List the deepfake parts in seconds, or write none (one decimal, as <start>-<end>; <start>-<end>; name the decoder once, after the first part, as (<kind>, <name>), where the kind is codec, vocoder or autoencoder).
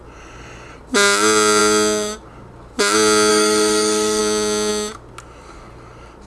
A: 3.3-4.2 (codec, DAC)